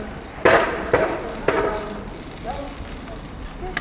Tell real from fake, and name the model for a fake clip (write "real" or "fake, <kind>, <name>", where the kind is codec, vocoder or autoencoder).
real